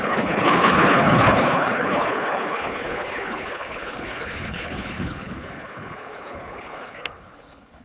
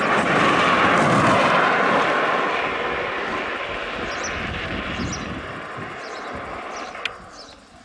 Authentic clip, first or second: second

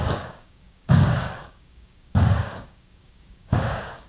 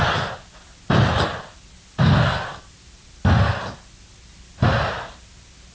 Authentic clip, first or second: second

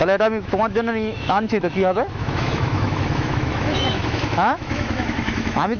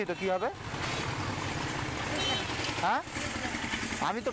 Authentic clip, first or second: second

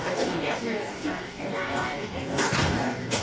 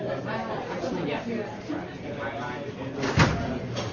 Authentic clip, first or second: second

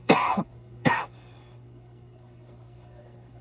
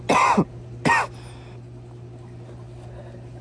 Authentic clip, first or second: second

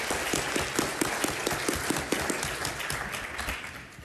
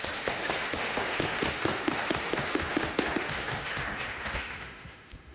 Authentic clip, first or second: first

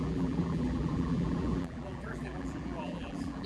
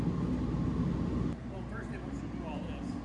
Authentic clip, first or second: second